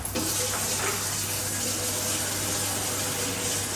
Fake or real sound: real